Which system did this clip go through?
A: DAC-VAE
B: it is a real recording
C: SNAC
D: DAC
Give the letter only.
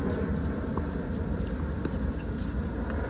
B